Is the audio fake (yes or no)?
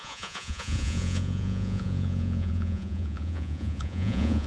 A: yes